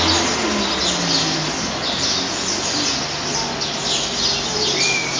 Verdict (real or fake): real